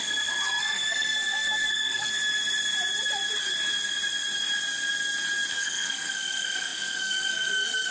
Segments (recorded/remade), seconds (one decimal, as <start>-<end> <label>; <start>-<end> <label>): 0.0-2.1 remade; 2.1-5.5 recorded; 5.5-7.9 remade